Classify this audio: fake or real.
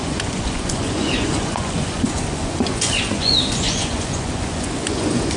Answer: fake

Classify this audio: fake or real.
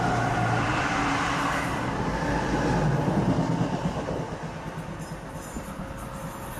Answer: real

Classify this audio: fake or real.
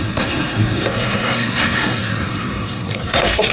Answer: fake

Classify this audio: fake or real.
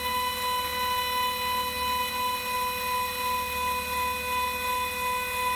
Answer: real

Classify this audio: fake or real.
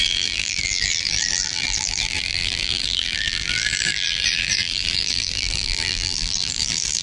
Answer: fake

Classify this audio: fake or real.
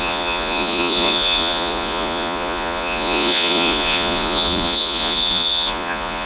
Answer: fake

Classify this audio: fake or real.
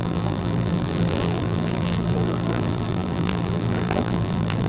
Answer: fake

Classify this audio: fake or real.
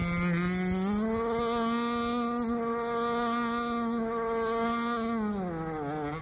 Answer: real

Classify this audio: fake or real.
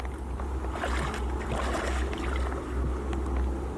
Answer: real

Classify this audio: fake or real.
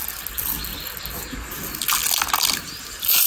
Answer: real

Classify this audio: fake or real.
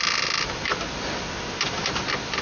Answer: real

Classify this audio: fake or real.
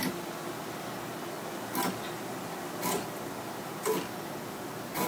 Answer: real